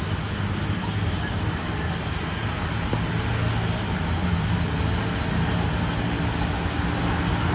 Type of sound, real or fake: real